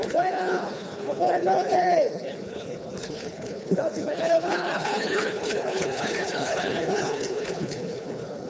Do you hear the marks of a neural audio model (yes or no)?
yes